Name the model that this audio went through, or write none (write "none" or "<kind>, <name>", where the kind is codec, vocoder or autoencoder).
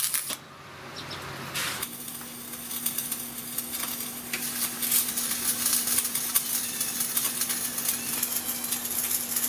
none